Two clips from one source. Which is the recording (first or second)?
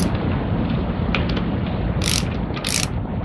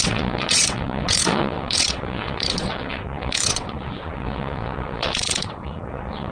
first